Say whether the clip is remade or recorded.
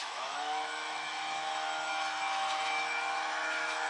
remade